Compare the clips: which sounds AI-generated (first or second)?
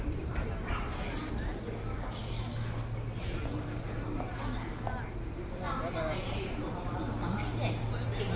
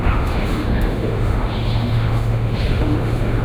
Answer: second